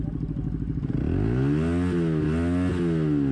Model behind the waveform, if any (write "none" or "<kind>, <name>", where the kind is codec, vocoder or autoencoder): none